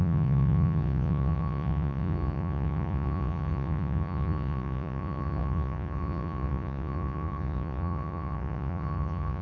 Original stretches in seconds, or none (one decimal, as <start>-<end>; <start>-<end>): none